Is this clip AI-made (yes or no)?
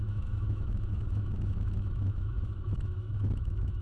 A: yes